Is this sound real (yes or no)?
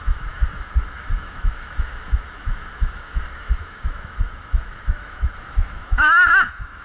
no